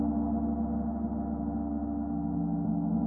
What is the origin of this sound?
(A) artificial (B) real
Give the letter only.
B